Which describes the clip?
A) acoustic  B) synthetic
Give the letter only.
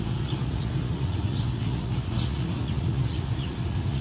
B